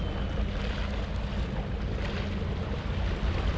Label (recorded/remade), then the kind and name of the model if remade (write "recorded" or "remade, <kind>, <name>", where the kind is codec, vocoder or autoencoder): recorded